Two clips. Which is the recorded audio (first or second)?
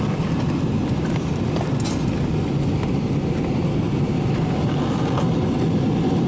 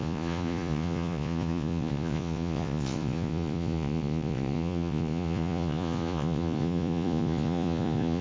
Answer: first